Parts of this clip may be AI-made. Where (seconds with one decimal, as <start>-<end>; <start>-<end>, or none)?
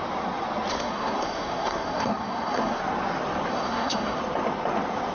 0.7-2.8; 3.5-4.2